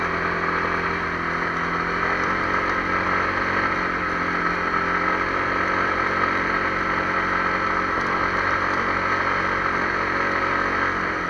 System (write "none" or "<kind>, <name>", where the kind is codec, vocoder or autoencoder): none